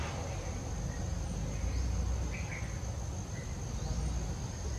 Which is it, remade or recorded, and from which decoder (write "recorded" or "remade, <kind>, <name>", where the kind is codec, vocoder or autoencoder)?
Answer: recorded